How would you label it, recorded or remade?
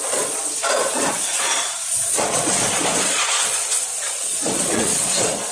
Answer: remade